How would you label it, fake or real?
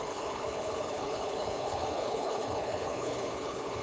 fake